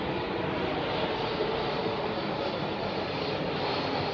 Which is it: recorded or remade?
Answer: recorded